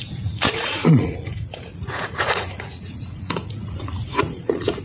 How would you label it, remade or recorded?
remade